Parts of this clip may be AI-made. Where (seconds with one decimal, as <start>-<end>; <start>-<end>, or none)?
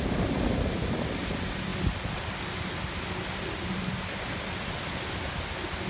none